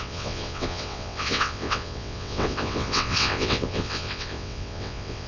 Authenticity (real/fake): fake